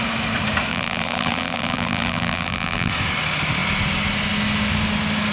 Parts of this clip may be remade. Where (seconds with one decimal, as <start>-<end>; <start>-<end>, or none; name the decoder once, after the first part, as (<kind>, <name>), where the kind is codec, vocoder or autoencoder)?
0.7-2.9 (vocoder, BigVGAN v2)

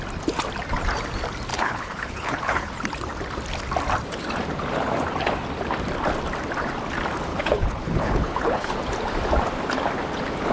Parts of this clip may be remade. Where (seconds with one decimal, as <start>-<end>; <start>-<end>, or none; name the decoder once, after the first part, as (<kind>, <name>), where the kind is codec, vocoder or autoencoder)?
1.5-2.7 (codec, HILCodec); 7.3-8.7

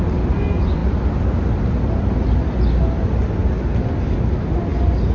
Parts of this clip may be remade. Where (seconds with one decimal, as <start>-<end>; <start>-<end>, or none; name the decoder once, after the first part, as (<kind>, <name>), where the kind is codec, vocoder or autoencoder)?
none

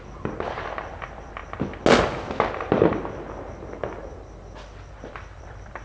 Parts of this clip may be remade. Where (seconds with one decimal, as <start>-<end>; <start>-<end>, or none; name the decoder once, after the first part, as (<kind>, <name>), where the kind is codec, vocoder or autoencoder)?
0.0-1.4 (vocoder, BigVGAN v2); 4.9-5.8

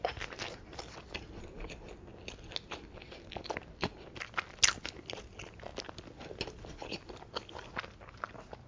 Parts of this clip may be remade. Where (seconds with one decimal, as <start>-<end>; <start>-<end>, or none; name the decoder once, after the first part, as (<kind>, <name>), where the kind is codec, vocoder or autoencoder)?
none

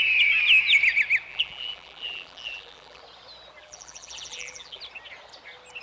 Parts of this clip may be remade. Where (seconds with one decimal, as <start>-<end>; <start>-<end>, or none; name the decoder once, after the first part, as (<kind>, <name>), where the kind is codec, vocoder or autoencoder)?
1.3-3.0 (vocoder, BigVGAN v2); 3.6-4.8